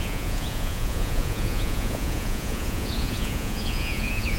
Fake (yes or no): yes